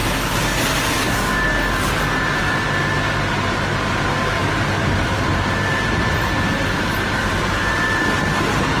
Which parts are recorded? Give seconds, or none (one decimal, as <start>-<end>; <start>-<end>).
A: 0.0-8.8